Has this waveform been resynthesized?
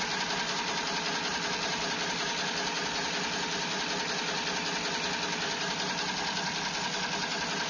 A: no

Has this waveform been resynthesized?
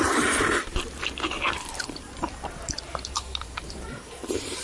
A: yes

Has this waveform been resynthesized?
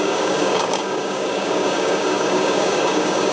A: yes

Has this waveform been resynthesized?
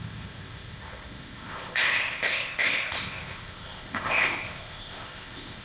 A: yes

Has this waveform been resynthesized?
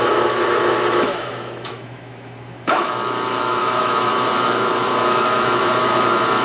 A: yes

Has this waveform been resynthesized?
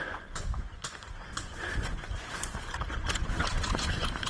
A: yes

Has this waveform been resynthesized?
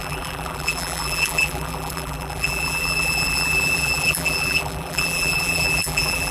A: yes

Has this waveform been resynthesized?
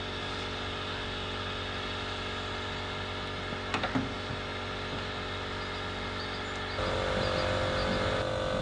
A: no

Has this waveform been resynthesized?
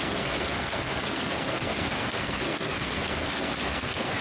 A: yes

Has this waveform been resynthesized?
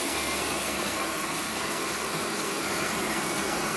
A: yes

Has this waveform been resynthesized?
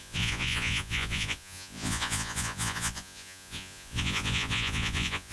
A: yes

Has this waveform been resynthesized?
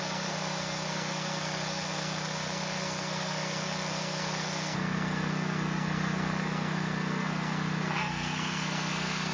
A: yes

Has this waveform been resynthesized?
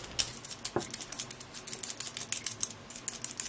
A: no